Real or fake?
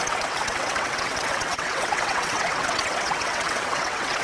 fake